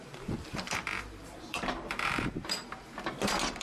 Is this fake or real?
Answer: fake